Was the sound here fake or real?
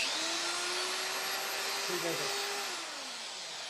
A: real